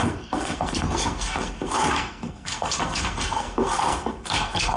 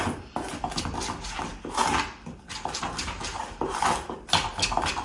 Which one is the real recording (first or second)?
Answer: second